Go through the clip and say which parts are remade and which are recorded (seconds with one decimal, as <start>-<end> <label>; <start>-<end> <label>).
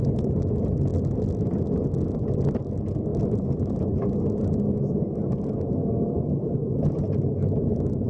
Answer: 0.0-0.9 recorded; 0.9-1.4 remade; 1.4-3.1 recorded; 3.1-5.4 remade; 5.4-8.1 recorded